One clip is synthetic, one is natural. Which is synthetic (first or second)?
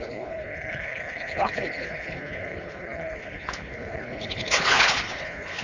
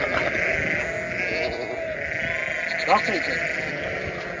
first